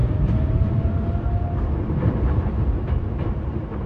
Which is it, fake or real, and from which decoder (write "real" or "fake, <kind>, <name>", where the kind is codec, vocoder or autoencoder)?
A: fake, vocoder, BigVGAN v2